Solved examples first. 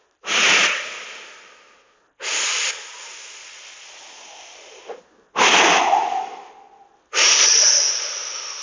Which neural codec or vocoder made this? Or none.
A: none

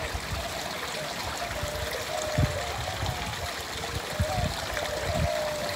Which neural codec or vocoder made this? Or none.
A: none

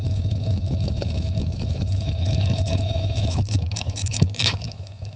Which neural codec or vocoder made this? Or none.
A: autoencoder, DAC-VAE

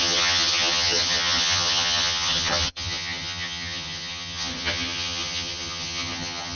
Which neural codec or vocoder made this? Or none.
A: vocoder, HiFi-GAN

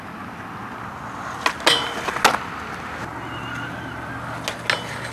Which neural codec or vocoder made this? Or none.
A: none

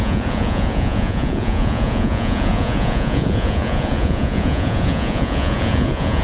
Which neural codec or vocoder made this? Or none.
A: vocoder, Vocos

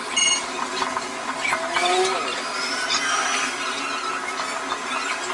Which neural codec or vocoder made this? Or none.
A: none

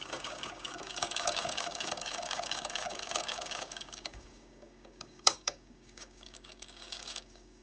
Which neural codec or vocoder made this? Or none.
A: codec, DAC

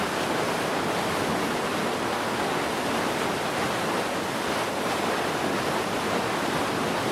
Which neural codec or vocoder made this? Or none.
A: none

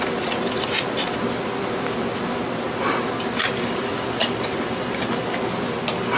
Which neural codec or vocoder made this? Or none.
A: none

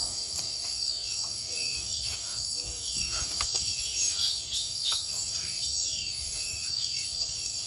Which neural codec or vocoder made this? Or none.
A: codec, DAC